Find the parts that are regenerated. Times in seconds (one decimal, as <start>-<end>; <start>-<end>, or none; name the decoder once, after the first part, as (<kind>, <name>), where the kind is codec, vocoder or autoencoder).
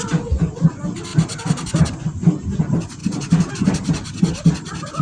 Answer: none